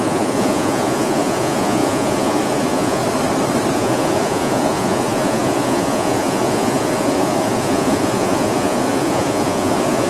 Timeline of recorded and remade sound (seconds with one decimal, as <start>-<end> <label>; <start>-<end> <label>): 0.0-3.0 remade; 3.0-3.7 recorded; 3.7-10.1 remade